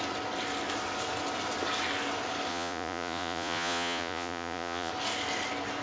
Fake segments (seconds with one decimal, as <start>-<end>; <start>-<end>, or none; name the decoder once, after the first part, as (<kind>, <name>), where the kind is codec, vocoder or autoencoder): 2.5-4.9 (vocoder, Vocos)